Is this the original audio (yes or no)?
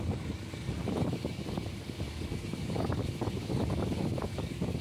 no